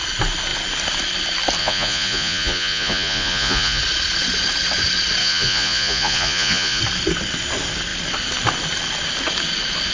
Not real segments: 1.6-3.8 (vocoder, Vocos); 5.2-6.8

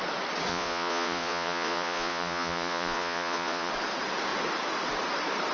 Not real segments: 0.5-3.7 (vocoder, Vocos)

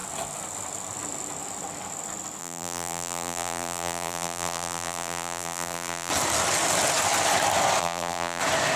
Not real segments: 2.4-6.1 (vocoder, BigVGAN v2); 7.8-8.4

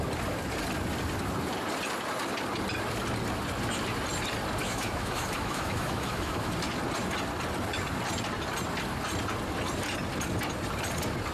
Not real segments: 4.6-6.5 (autoencoder, DAC-VAE)

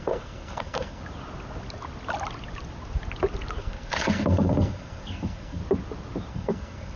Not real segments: 0.0-1.0 (codec, SNAC); 3.6-5.6; 6.3-7.0